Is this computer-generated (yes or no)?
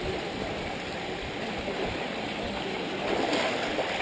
no